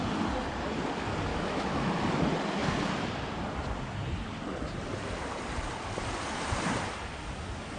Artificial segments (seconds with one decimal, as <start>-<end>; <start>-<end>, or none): 1.3-2.0